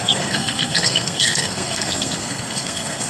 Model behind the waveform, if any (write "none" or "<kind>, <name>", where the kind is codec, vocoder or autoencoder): codec, SNAC